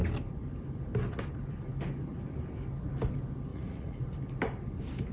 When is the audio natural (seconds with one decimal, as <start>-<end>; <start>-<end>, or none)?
0.0-3.5; 4.0-5.1